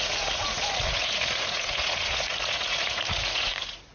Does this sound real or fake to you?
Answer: fake